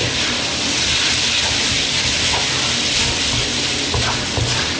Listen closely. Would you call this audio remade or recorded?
remade